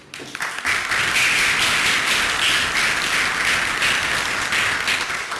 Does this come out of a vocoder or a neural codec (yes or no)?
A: no